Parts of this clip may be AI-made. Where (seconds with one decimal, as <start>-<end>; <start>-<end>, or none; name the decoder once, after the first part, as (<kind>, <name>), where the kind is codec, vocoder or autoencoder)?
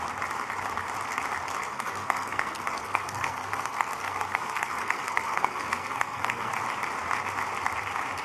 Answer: 1.6-6.5 (codec, SNAC)